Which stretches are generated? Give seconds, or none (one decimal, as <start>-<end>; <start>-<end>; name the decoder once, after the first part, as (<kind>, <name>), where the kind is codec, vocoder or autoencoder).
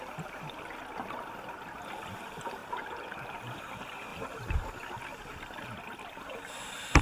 2.6-3.6 (vocoder, BigVGAN v2); 4.1-4.7